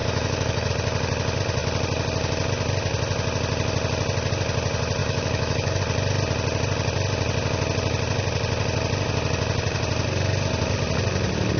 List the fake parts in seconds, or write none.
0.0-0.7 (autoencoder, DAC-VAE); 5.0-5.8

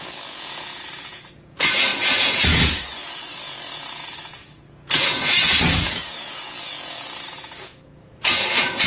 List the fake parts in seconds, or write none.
0.0-8.9 (vocoder, Vocos)